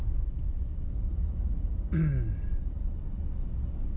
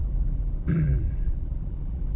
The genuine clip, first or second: first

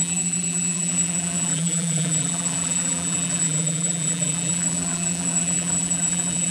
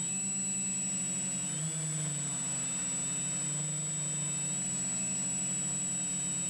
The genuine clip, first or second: second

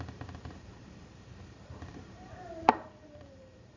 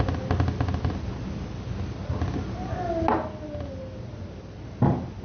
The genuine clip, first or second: second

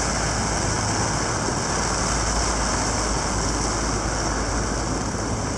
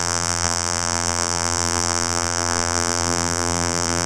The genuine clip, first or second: first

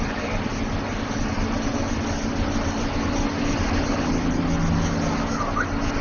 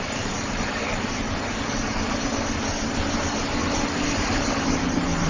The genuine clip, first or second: first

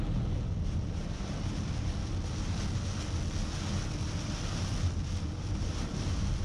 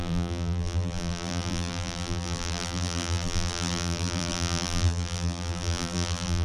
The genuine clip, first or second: first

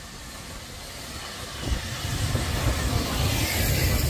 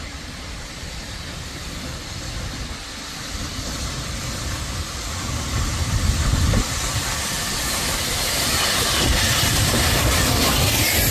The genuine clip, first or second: first